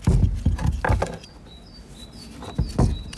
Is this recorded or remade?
recorded